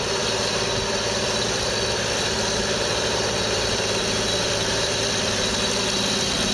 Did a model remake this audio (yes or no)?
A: yes